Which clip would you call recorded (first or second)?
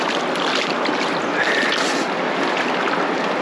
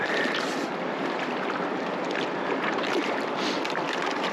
first